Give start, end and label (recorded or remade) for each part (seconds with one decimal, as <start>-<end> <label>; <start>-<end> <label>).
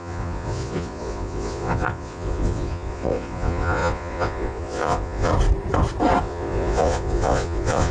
0.0-5.3 remade; 5.3-6.2 recorded; 6.2-7.9 remade